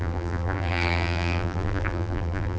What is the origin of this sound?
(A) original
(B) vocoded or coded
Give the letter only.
B